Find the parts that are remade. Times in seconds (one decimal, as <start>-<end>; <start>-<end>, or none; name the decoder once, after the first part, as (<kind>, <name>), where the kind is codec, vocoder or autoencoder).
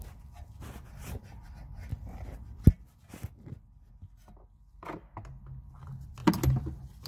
none